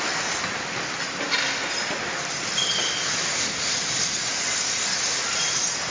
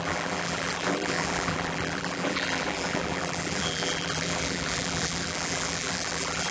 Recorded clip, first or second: first